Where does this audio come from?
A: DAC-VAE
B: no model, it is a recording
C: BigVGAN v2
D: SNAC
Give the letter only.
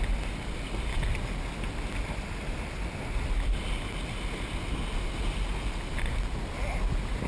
B